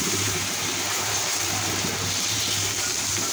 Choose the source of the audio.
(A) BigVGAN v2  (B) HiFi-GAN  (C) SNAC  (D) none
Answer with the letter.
A